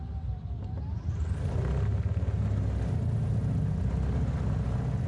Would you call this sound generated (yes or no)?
no